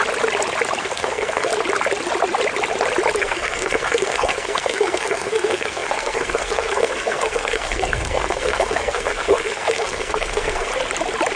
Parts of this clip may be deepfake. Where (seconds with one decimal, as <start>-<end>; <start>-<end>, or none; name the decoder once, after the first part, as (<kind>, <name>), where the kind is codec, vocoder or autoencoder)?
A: 0.8-1.5 (codec, SNAC); 3.2-10.7